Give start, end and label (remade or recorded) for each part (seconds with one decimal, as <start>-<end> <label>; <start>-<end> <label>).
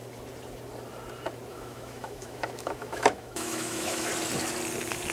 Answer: 0.0-1.5 recorded; 1.5-4.1 remade; 4.1-5.1 recorded